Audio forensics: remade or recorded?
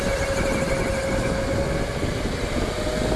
recorded